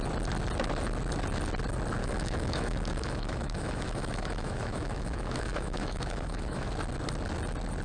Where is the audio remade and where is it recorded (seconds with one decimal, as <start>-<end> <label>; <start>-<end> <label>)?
0.0-2.0 recorded; 2.0-6.7 remade; 6.7-7.8 recorded